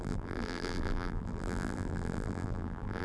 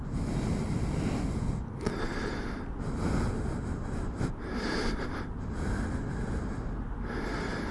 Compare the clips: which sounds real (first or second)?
second